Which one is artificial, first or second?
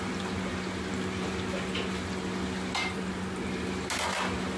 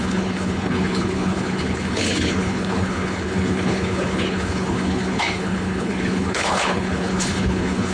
second